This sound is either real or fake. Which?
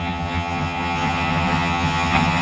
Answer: fake